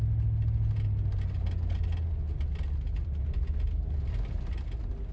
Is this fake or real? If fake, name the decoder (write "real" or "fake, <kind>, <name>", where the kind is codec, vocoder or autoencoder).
real